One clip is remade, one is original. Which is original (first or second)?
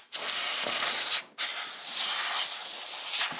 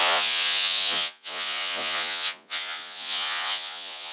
first